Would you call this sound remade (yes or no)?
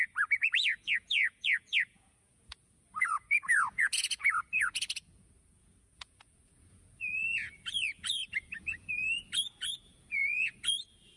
yes